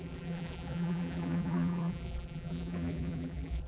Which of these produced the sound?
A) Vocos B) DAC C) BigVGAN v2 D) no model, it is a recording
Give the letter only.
C